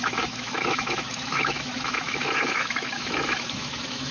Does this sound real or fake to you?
fake